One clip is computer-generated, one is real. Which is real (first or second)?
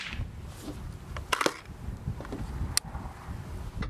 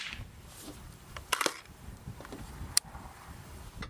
first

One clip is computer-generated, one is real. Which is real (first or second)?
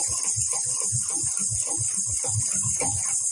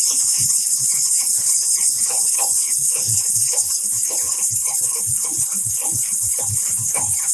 first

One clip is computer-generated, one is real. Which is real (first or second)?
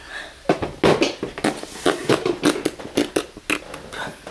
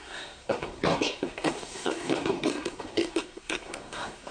first